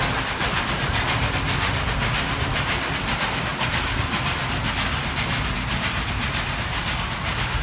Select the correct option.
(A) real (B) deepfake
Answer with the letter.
A